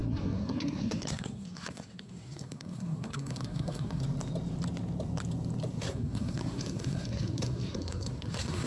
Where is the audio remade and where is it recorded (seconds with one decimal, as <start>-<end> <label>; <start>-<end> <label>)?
0.0-4.0 remade; 4.0-5.8 recorded; 5.8-8.7 remade